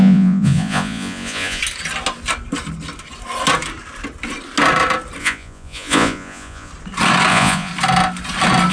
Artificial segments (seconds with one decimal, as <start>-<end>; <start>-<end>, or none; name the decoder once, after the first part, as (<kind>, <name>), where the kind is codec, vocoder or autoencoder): 0.0-1.6 (vocoder, Vocos); 5.2-6.7; 7.3-7.7